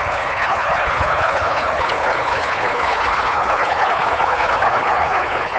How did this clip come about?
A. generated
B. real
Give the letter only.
A